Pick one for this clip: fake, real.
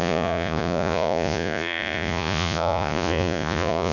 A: fake